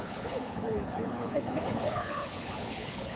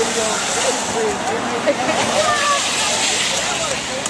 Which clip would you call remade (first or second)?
first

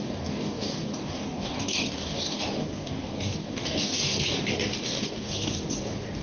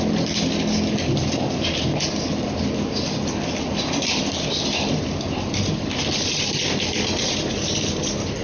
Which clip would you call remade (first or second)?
first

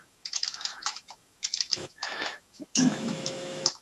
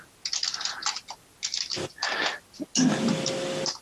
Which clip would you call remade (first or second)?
first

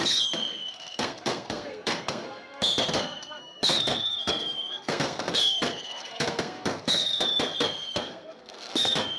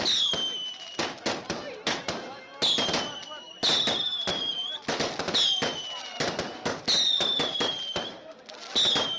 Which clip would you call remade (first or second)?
first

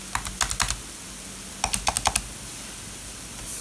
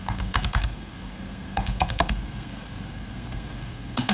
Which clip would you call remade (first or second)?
second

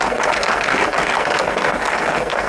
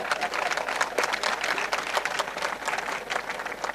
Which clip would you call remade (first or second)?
first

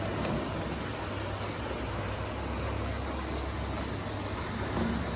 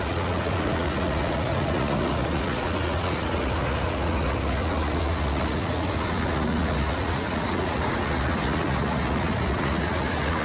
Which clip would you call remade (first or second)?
second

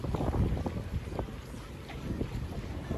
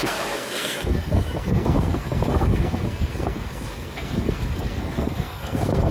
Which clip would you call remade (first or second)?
second